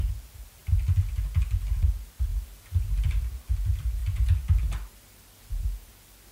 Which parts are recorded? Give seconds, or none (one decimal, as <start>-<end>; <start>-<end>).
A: 0.0-6.3